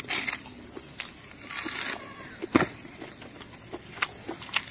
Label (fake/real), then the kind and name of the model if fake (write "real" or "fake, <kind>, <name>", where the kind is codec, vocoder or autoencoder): real